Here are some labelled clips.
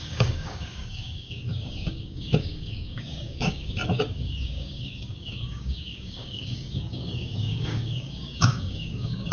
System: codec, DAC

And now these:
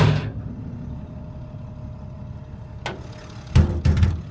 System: none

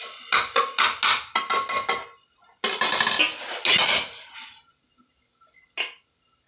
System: none